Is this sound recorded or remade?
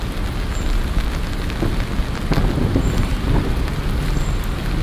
recorded